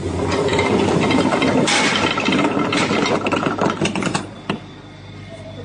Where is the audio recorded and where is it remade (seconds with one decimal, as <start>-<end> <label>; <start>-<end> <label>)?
0.0-5.6 recorded